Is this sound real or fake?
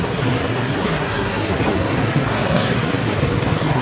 fake